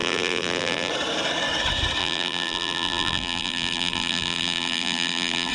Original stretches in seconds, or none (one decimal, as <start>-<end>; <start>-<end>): 0.9-2.0